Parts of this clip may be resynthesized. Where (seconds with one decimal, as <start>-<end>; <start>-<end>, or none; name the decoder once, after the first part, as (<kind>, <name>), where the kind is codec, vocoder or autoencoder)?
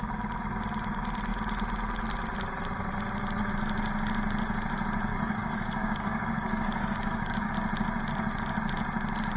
5.1-7.5 (codec, DAC)